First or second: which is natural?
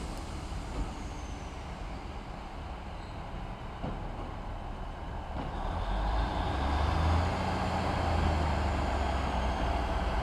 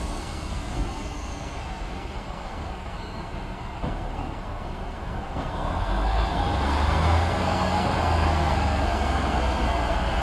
first